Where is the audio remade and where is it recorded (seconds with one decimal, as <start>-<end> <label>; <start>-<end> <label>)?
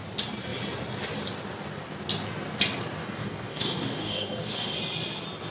0.0-3.0 recorded; 3.0-4.7 remade; 4.7-5.5 recorded